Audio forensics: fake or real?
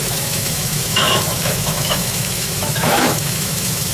fake